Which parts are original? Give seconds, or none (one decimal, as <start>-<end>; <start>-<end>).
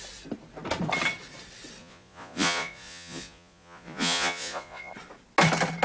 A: 0.0-1.8; 4.9-5.8